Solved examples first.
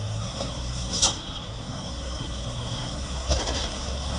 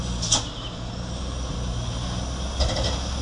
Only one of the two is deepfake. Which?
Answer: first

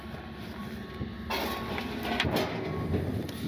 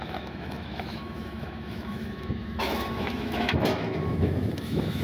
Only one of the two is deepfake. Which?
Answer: second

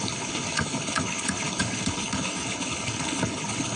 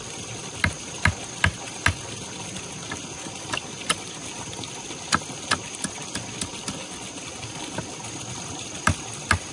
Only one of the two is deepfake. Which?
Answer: first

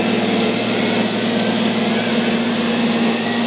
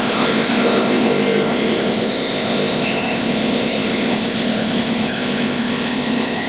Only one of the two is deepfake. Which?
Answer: second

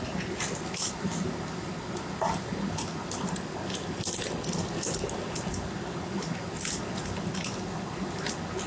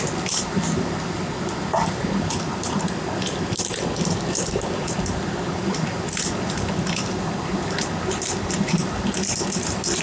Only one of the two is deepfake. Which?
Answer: second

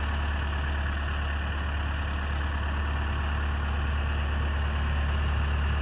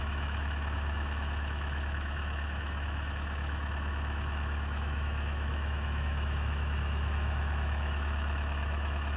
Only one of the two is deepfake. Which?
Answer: second